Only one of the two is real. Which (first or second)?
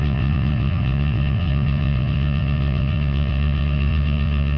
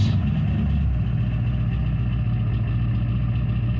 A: second